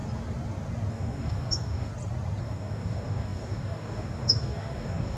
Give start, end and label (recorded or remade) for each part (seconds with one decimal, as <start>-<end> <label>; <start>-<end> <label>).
0.0-0.9 recorded; 0.9-1.9 remade; 1.9-2.4 recorded; 2.4-5.2 remade

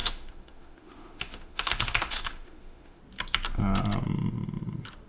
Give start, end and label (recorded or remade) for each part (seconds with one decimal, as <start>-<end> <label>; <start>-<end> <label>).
0.0-3.0 remade; 3.0-5.1 recorded

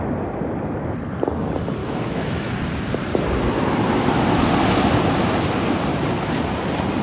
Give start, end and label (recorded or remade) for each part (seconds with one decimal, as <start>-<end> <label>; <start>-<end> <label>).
0.0-1.8 recorded; 1.8-2.5 remade; 2.5-7.0 recorded

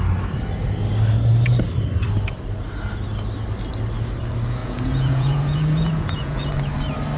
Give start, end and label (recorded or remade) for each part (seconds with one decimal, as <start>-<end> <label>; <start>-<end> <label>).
0.0-4.6 recorded; 4.6-6.5 remade; 6.5-7.2 recorded

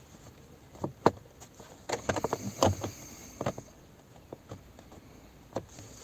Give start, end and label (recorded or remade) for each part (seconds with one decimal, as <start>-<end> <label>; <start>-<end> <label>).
0.0-6.0 recorded

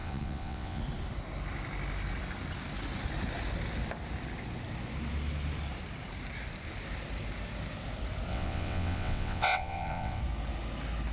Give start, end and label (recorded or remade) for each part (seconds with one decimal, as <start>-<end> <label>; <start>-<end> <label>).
0.0-0.8 remade; 0.8-8.3 recorded; 8.3-10.2 remade; 10.2-11.1 recorded